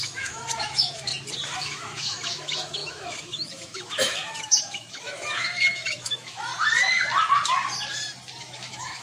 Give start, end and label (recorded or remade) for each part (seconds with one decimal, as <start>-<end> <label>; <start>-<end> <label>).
0.0-1.1 remade; 1.1-1.6 recorded; 1.6-6.5 remade; 6.5-8.4 recorded; 8.4-9.0 remade